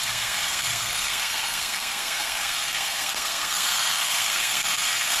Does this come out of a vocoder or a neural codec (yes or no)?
yes